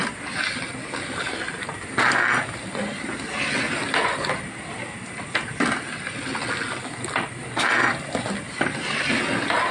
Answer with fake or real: real